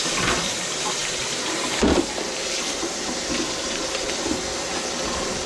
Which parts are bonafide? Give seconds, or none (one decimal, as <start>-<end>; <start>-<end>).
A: 0.0-5.5